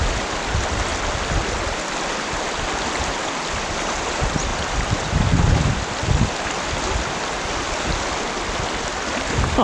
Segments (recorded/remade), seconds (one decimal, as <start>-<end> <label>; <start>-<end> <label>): 0.0-4.5 recorded; 4.5-6.1 remade; 6.1-9.6 recorded